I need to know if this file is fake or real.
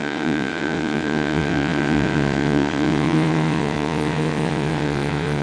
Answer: fake